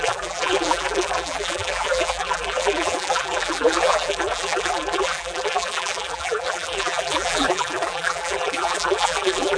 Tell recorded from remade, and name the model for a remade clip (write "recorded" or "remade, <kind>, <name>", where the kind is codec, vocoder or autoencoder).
remade, vocoder, BigVGAN v2